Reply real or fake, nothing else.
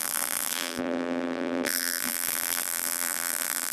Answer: fake